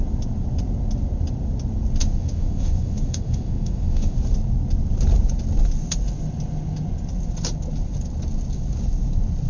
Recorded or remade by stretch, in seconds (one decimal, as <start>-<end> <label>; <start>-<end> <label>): 0.0-2.0 recorded; 2.0-4.2 remade; 4.2-9.5 recorded

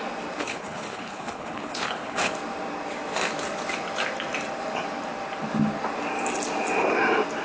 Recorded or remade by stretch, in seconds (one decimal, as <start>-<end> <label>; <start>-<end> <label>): 0.0-0.4 recorded; 0.4-2.3 remade; 2.3-7.4 recorded

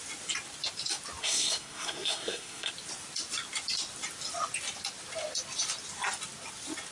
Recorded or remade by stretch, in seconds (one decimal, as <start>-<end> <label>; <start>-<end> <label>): 0.0-1.2 recorded; 1.2-2.7 remade; 2.7-6.9 recorded

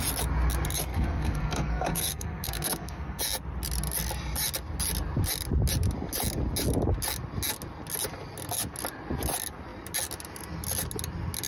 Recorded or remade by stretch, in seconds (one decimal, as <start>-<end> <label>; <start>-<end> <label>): 0.0-0.9 recorded; 0.9-3.2 remade; 3.2-11.5 recorded

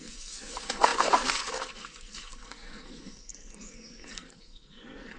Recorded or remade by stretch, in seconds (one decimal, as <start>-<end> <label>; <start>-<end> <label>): 0.0-5.2 remade

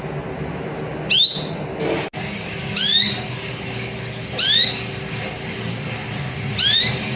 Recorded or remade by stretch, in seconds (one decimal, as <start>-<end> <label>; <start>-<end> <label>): 0.0-2.9 recorded; 2.9-7.2 remade

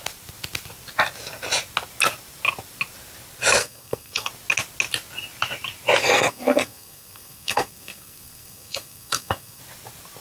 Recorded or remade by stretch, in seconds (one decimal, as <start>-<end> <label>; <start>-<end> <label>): 0.0-3.6 recorded; 3.6-4.3 remade; 4.3-6.0 recorded; 6.0-9.6 remade; 9.6-10.2 recorded